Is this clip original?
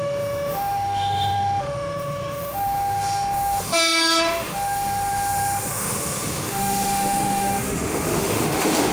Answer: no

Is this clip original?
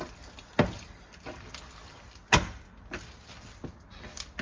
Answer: yes